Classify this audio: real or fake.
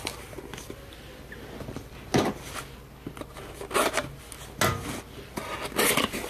real